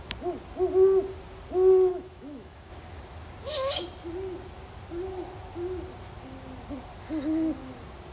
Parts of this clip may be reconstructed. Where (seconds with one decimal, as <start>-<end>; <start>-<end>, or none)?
1.9-2.7